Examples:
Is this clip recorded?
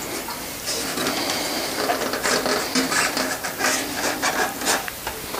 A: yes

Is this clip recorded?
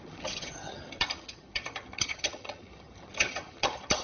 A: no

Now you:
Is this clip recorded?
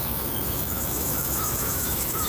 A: no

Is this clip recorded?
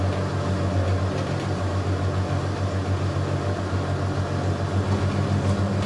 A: yes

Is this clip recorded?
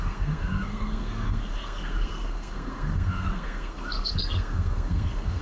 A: no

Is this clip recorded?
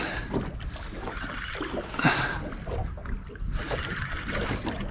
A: yes